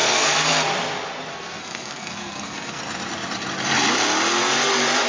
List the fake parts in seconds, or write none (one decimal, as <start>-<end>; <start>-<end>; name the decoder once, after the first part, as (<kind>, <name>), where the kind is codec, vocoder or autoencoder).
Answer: 0.0-0.5 (codec, SNAC); 1.3-2.8